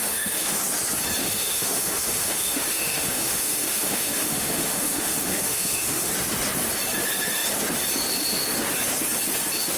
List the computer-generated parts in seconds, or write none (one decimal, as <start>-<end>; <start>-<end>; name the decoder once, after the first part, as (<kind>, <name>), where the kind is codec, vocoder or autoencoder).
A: 0.0-0.6 (autoencoder, DAC-VAE); 1.2-6.1